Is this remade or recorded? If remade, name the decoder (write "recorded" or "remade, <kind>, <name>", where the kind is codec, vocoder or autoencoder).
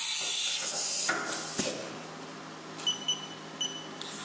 recorded